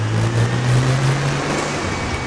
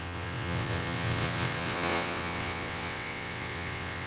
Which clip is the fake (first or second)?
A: second